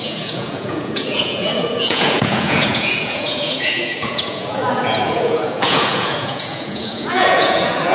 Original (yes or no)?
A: no